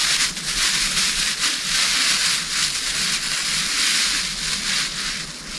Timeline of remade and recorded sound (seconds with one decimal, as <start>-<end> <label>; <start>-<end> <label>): 0.0-5.6 recorded